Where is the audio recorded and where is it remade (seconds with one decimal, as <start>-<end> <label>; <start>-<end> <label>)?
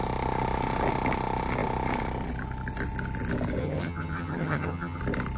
0.0-3.6 recorded; 3.6-5.0 remade; 5.0-5.4 recorded